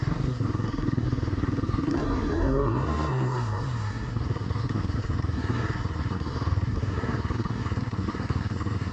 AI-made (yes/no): yes